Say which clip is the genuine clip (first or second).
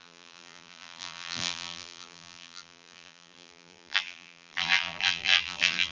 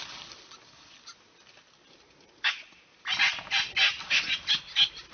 second